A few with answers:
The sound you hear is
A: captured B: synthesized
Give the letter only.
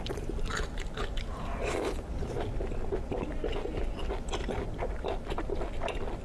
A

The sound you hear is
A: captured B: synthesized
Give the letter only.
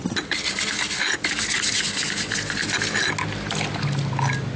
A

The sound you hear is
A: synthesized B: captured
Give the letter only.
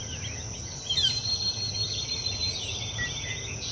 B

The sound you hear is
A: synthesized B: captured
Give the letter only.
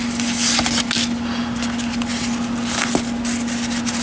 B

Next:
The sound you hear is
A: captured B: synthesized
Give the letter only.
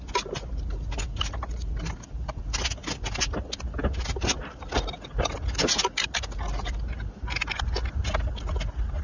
A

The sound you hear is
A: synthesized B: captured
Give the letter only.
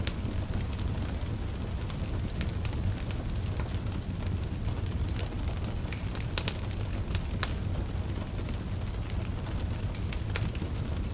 B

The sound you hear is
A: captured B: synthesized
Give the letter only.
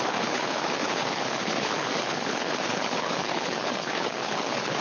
B